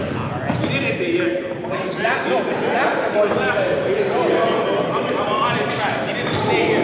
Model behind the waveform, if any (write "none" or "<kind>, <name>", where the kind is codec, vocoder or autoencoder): none